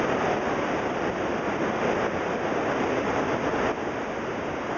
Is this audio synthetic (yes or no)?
no